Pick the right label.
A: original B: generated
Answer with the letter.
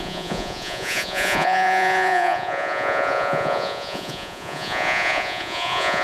B